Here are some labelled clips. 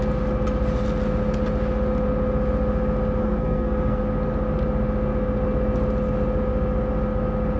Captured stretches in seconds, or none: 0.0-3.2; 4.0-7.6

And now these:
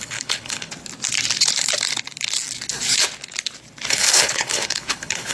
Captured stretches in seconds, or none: 0.7-3.9

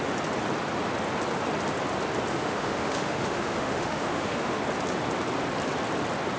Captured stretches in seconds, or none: 0.0-2.3; 4.6-6.4

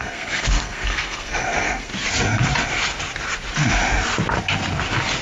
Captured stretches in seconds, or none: 1.9-5.2

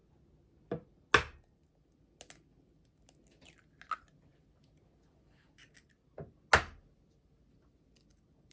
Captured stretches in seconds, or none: 0.0-8.5

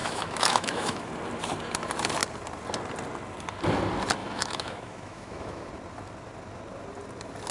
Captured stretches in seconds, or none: 1.1-4.2; 5.7-7.5

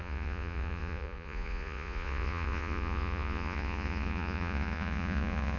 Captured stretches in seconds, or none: none